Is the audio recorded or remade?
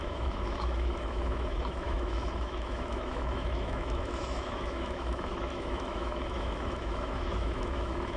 remade